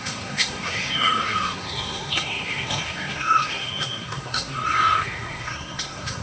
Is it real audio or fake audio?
fake